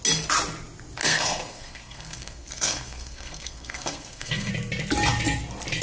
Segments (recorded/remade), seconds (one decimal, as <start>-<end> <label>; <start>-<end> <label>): 0.0-1.0 recorded; 1.0-4.5 remade; 4.5-5.8 recorded